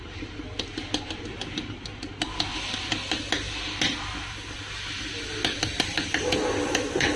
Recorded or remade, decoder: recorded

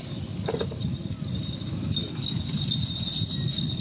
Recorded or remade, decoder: recorded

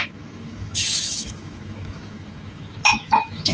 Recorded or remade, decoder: remade, autoencoder, DAC-VAE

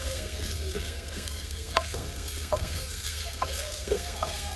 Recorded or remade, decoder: remade, codec, SNAC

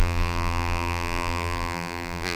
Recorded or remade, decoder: remade, vocoder, BigVGAN v2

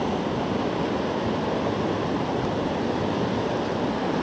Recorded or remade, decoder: recorded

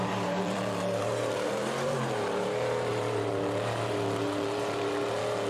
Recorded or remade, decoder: remade, vocoder, BigVGAN v2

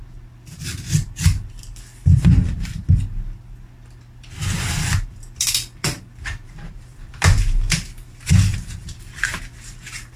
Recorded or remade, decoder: remade, vocoder, BigVGAN v2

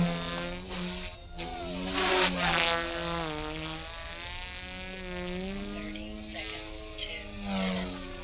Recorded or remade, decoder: recorded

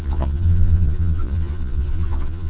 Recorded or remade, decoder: remade, vocoder, Vocos